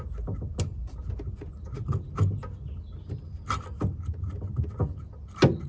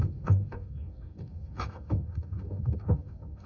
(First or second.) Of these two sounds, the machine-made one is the second